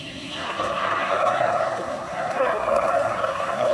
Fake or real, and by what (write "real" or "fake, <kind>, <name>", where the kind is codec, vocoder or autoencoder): fake, codec, SNAC